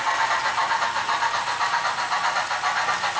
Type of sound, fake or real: real